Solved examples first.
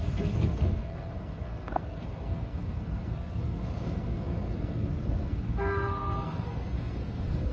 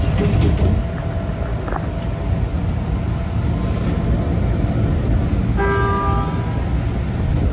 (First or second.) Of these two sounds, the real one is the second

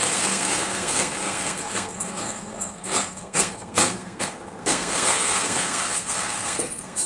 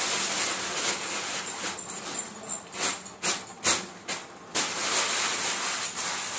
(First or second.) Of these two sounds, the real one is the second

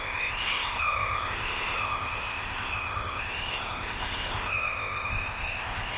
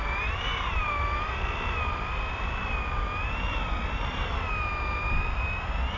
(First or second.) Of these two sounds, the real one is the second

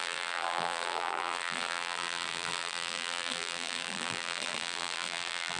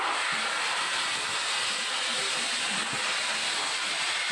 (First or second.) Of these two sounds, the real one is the second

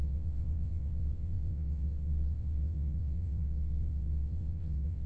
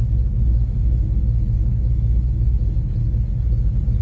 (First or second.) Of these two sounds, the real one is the second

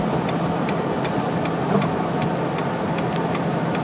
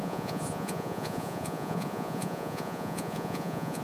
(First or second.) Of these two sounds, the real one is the first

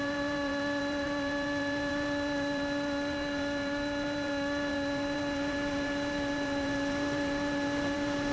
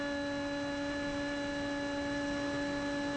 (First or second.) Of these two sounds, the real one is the second